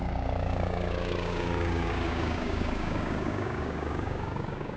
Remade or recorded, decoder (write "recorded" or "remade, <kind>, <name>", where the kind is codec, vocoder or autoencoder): remade, codec, DAC